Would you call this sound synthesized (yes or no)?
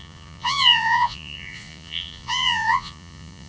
yes